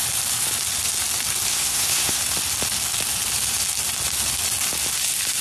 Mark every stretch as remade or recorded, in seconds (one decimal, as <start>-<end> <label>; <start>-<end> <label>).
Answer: 0.0-1.5 recorded; 1.5-2.2 remade; 2.2-5.4 recorded